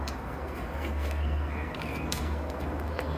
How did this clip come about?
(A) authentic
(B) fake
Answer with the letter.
B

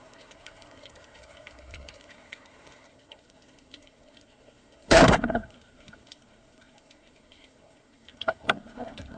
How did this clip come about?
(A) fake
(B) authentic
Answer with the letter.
A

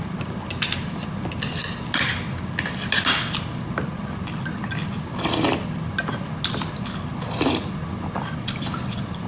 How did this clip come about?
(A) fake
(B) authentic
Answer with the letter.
B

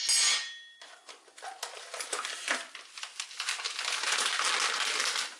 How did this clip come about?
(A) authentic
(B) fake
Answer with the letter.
A